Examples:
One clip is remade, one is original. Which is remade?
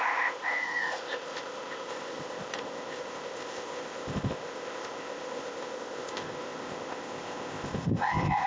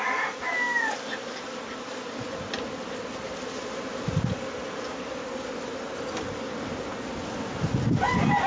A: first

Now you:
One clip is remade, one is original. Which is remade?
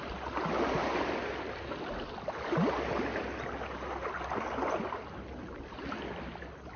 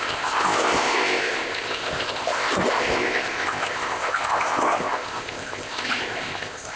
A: second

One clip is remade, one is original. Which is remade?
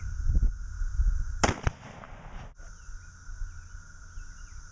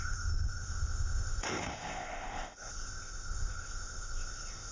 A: second